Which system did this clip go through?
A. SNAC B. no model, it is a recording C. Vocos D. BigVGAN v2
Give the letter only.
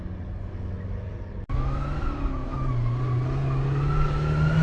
B